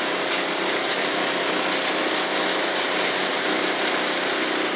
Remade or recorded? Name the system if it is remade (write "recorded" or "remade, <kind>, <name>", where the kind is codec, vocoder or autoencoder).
recorded